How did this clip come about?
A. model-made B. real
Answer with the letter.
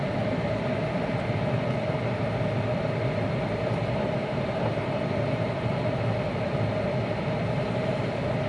B